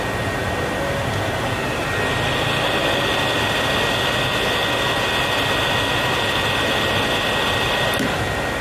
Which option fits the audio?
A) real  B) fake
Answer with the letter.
A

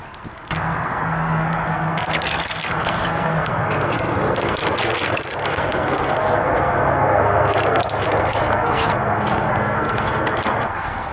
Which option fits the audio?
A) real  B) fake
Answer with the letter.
B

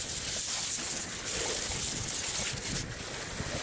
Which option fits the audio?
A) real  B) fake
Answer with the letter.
A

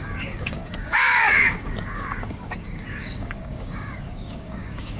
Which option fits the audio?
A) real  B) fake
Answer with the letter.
B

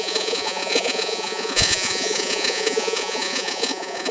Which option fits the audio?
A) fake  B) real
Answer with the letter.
A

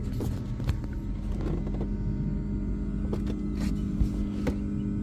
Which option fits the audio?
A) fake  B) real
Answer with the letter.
B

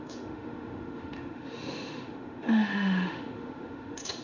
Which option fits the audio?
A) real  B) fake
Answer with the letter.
B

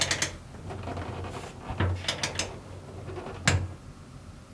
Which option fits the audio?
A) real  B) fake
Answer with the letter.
A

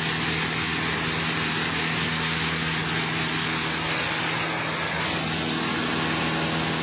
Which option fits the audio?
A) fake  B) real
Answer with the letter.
B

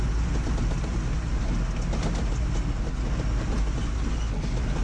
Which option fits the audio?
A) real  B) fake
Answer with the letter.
A